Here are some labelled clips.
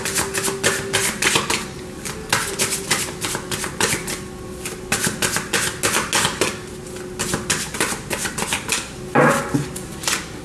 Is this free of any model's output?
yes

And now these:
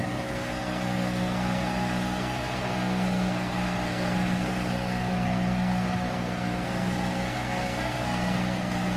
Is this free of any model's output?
no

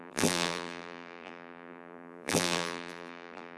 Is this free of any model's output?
no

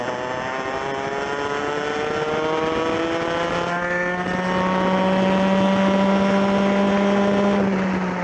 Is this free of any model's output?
yes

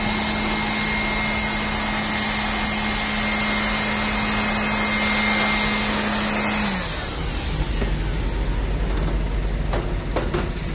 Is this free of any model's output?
yes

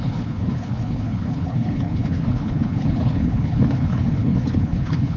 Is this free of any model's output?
no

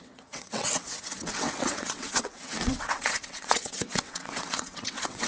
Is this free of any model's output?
no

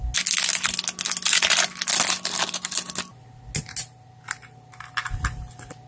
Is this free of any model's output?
yes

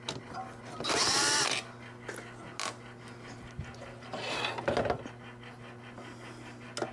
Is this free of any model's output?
yes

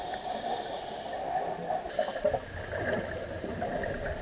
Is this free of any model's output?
yes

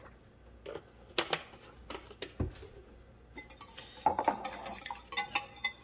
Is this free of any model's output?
yes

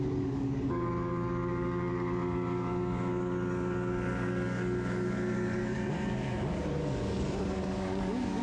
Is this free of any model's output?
no